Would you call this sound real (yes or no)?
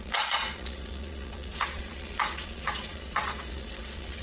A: no